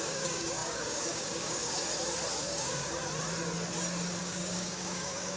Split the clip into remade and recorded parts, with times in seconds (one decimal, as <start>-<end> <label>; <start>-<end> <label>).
0.0-1.8 remade; 1.8-2.4 recorded; 2.4-3.0 remade; 3.0-4.2 recorded; 4.2-5.4 remade

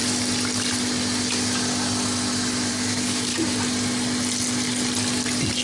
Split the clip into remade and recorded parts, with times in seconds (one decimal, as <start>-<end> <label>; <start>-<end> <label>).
0.0-2.7 recorded; 2.7-3.3 remade; 3.3-5.6 recorded

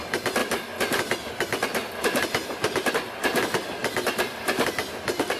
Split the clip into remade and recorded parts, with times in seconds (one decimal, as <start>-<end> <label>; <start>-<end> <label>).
0.0-0.4 recorded; 0.4-2.9 remade; 2.9-3.8 recorded; 3.8-5.4 remade

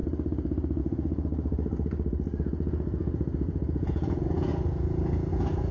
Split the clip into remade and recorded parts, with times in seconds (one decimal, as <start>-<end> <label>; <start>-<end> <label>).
0.0-0.8 recorded; 0.8-1.3 remade; 1.3-2.4 recorded; 2.4-5.7 remade

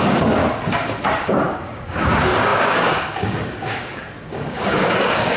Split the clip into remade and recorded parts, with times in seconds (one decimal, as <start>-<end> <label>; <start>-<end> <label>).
0.0-0.4 remade; 0.4-1.2 recorded; 1.2-5.4 remade

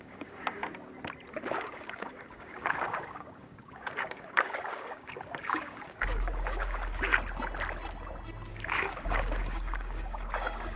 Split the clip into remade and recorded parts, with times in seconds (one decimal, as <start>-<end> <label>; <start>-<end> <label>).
0.0-0.6 remade; 0.6-1.3 recorded; 1.3-7.1 remade; 7.1-8.5 recorded; 8.5-10.8 remade

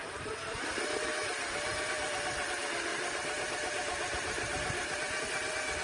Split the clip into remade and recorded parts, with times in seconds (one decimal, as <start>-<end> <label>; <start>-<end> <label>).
0.0-0.6 remade; 0.6-1.1 recorded; 1.1-2.5 remade; 2.5-2.9 recorded; 2.9-5.2 remade; 5.2-5.8 recorded